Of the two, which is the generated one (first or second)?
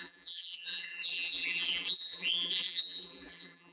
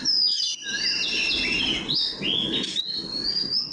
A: first